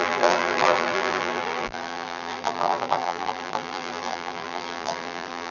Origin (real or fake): fake